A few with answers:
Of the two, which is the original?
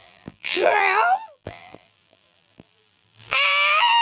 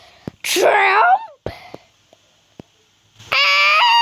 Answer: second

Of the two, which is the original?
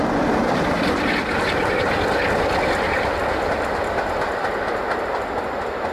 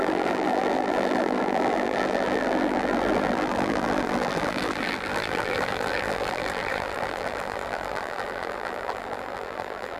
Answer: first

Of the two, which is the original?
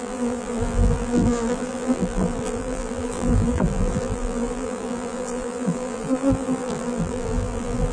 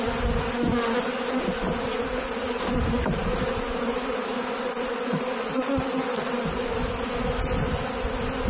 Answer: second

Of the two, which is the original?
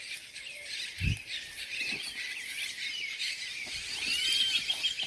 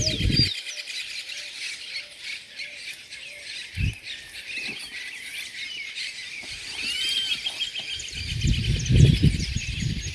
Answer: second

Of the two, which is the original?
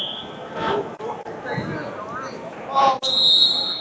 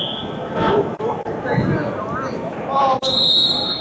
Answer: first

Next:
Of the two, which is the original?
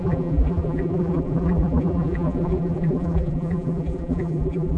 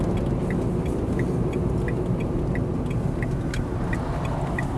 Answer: second